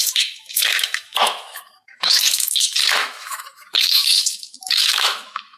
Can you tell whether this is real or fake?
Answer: fake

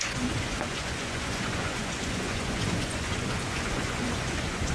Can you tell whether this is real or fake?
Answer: fake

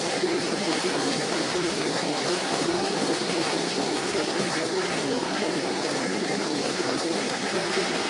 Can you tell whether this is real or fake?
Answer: fake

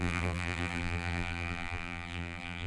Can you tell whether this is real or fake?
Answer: fake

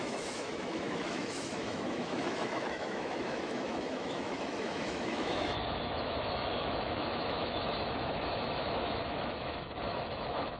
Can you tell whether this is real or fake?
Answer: fake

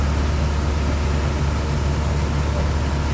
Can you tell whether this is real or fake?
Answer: real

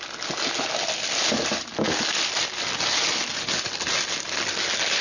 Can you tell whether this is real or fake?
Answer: real